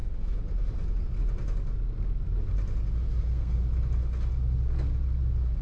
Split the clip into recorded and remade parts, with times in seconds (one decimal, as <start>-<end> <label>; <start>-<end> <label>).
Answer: 0.0-3.2 recorded; 3.2-3.6 remade; 3.6-5.6 recorded